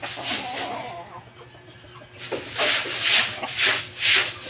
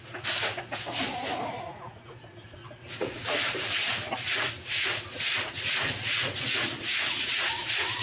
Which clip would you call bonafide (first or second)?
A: first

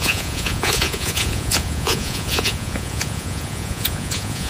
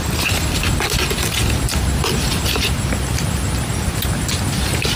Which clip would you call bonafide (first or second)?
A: second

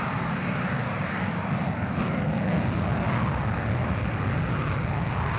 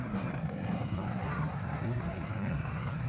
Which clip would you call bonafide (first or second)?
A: first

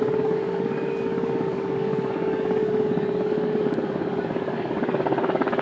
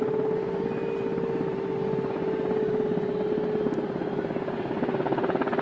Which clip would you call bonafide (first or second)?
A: second